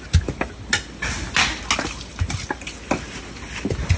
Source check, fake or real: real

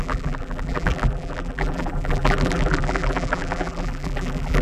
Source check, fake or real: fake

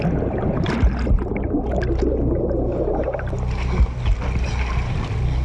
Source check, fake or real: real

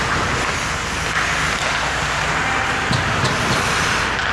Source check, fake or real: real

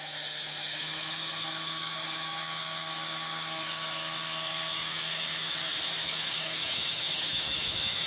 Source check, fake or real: fake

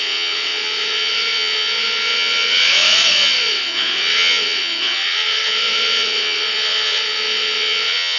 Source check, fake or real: fake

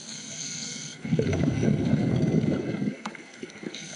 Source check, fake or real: fake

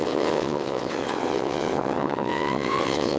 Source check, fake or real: fake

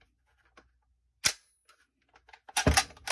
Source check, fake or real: real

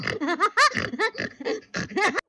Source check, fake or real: real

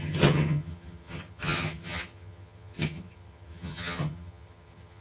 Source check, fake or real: fake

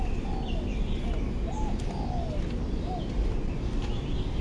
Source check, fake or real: real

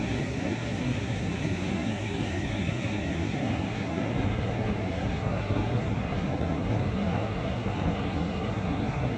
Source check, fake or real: fake